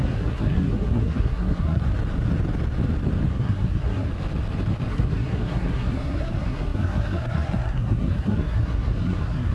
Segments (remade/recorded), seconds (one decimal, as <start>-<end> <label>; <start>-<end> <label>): 0.0-1.8 remade; 1.8-3.3 recorded; 3.3-4.1 remade; 4.1-4.9 recorded; 4.9-9.5 remade

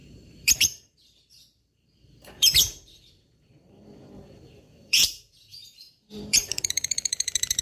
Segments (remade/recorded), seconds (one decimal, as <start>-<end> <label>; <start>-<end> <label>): 0.0-7.6 remade

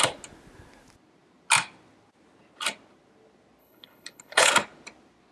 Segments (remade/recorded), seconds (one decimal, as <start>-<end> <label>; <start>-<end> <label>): 0.0-3.6 recorded; 3.6-4.5 remade; 4.5-5.3 recorded

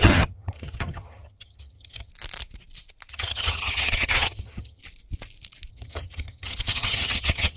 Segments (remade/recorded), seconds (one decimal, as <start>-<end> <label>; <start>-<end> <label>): 0.0-2.1 remade; 2.1-3.1 recorded; 3.1-4.8 remade; 4.8-5.7 recorded; 5.7-7.6 remade

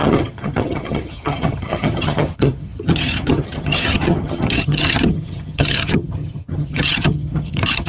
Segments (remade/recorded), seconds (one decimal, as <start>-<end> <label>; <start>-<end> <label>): 0.0-7.9 remade